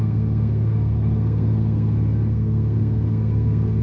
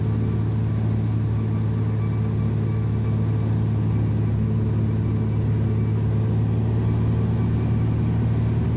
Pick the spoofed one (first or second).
first